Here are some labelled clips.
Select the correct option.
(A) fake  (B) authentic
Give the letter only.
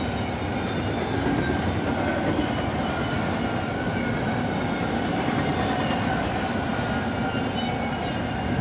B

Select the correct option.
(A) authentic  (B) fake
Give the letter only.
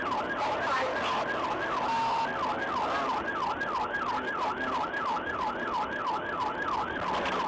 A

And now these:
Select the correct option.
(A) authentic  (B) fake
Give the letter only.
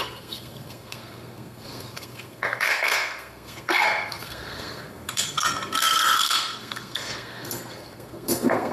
B